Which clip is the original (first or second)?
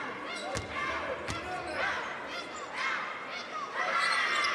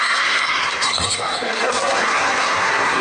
first